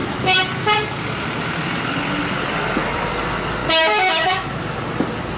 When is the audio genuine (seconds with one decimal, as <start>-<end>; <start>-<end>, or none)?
0.6-3.6; 4.6-5.4